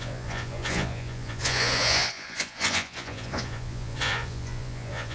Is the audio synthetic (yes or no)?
yes